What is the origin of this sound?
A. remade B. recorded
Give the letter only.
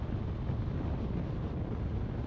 B